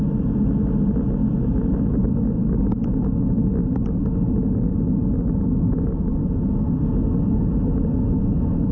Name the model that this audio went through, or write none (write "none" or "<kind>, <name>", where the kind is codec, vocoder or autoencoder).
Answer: none